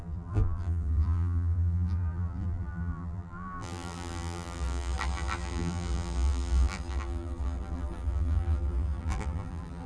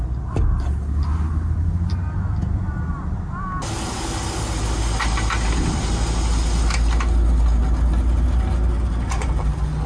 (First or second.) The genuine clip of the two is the second